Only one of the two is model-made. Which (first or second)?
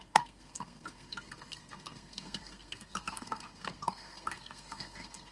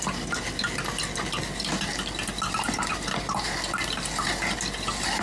first